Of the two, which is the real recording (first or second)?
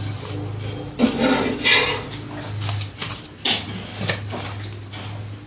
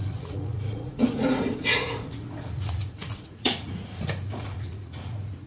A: first